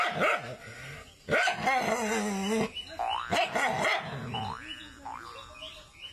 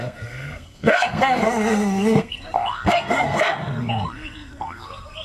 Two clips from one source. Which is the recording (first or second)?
first